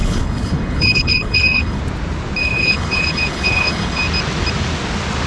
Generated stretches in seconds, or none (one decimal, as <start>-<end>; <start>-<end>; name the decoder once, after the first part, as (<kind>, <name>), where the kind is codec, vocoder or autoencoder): 0.0-1.8 (codec, HILCodec); 2.4-4.0